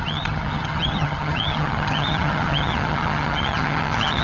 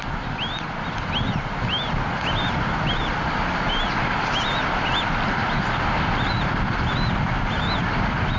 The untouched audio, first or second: second